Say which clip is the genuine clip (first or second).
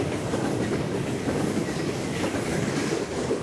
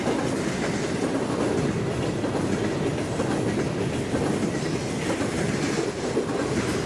second